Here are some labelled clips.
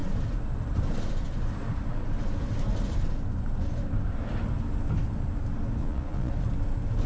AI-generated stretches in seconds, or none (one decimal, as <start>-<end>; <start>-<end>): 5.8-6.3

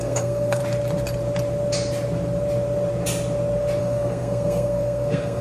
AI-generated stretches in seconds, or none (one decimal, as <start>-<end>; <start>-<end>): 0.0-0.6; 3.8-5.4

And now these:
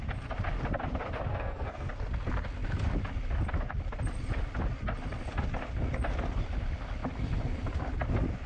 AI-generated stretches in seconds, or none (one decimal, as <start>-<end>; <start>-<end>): 1.3-1.9